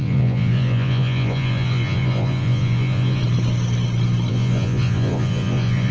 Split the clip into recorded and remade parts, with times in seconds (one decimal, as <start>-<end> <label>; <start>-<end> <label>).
0.0-3.2 remade; 3.2-4.3 recorded; 4.3-5.9 remade